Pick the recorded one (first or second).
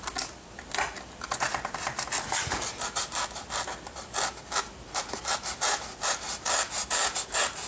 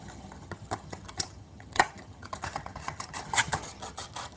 first